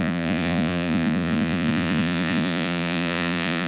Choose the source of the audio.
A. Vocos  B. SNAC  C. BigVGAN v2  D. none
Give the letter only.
A